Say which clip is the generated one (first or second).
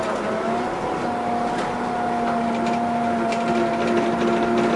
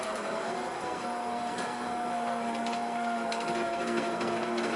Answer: second